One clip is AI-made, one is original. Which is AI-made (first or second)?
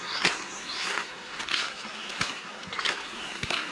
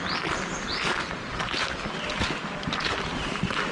first